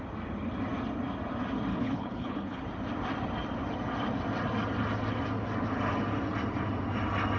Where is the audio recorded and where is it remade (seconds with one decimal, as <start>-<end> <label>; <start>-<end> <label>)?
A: 0.0-1.7 recorded; 1.7-2.6 remade; 2.6-7.4 recorded